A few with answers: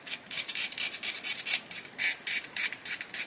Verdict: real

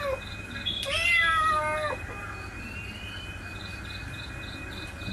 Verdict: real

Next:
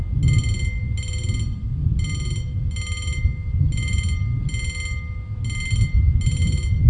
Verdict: real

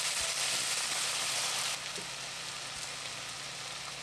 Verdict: real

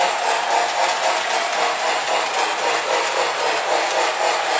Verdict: real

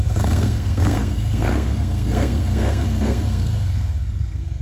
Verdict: fake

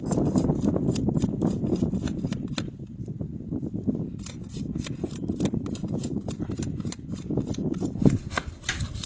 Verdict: real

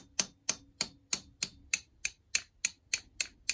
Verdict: real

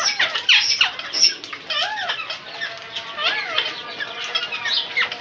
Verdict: real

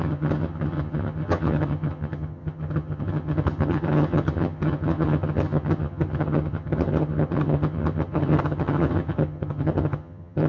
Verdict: fake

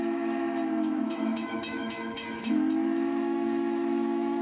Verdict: fake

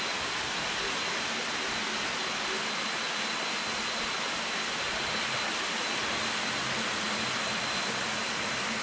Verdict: real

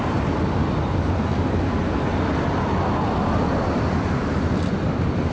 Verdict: real